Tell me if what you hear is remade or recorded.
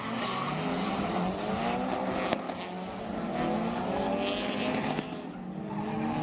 recorded